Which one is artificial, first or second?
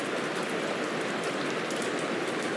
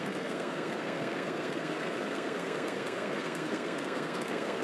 second